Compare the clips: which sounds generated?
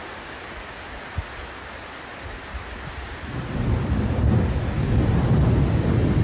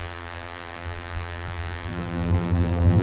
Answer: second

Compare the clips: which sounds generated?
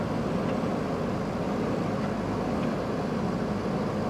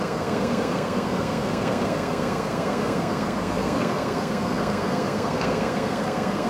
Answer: second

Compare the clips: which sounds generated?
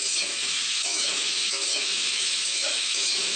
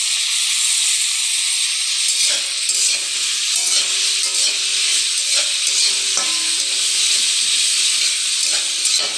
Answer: first